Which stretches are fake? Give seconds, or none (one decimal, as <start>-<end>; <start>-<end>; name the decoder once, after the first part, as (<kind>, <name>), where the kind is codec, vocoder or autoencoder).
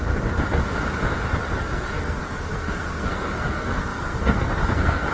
1.6-5.1 (codec, SNAC)